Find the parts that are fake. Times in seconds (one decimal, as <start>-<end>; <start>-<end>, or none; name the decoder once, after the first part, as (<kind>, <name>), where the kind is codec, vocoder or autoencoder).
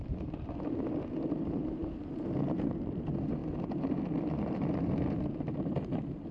0.0-3.4 (vocoder, BigVGAN v2); 4.4-6.3